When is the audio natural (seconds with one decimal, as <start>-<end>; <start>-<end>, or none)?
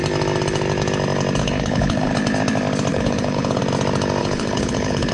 0.0-1.4; 2.1-2.9; 3.6-4.2